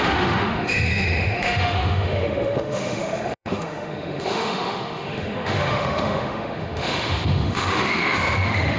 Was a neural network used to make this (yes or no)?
yes